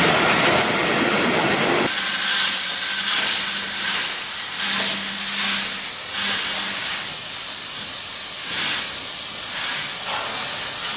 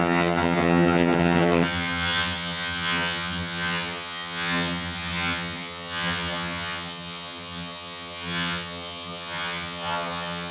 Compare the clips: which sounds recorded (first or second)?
first